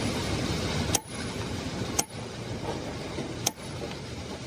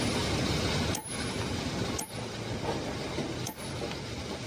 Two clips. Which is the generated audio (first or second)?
first